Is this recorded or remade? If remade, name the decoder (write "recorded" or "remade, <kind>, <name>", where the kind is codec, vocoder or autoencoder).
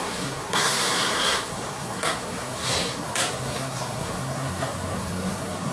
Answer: remade, codec, SNAC